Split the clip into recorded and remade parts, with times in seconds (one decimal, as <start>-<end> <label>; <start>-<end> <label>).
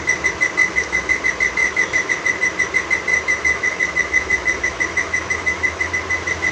0.0-0.6 recorded; 0.6-1.2 remade; 1.2-1.6 recorded; 1.6-2.1 remade; 2.1-3.1 recorded; 3.1-5.9 remade; 5.9-6.5 recorded